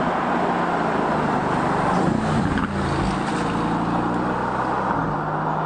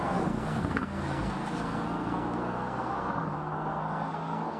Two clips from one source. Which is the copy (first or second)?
second